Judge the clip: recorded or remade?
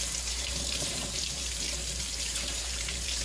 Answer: remade